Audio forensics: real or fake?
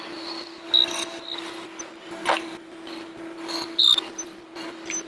real